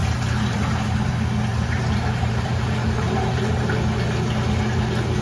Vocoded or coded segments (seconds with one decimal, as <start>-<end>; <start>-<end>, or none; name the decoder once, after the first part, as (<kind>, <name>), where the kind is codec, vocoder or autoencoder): 0.0-1.1 (vocoder, BigVGAN v2); 1.5-3.4